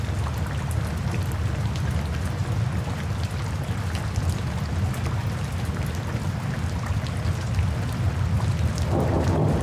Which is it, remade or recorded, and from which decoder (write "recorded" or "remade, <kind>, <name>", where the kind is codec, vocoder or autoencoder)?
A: recorded